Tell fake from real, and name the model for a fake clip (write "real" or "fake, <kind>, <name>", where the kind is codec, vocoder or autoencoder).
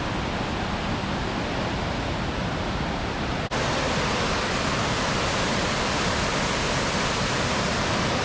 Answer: real